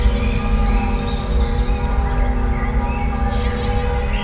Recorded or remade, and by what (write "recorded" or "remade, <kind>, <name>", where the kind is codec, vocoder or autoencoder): recorded